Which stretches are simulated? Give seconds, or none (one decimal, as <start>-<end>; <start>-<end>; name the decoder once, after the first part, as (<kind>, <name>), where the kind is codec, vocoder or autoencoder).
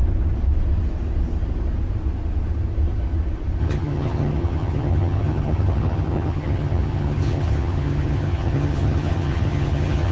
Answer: 3.6-10.1 (vocoder, HiFi-GAN)